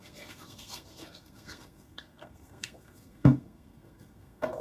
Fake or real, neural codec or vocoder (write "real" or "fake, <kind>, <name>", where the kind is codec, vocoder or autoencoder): fake, codec, SNAC